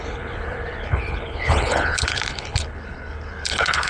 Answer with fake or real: fake